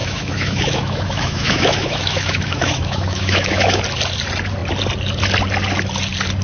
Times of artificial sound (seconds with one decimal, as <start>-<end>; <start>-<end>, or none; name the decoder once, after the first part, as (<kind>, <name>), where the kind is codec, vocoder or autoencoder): 0.0-3.8 (autoencoder, DAC-VAE)